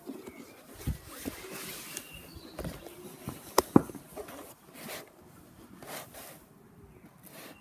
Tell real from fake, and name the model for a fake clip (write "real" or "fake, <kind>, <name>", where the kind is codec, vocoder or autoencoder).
real